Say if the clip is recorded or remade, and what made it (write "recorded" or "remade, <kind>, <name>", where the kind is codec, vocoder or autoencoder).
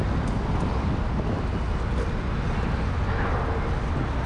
recorded